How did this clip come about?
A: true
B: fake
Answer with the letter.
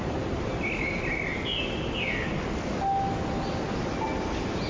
A